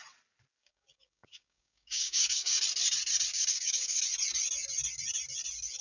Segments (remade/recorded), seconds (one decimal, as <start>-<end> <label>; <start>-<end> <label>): 0.0-0.6 recorded; 0.6-2.6 remade; 2.6-3.3 recorded; 3.3-4.0 remade; 4.0-5.8 recorded